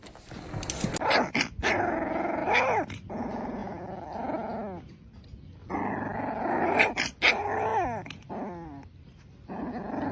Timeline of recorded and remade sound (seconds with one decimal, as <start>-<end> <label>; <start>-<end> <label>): 0.0-10.1 recorded